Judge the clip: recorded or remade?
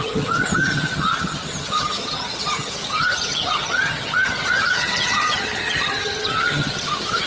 remade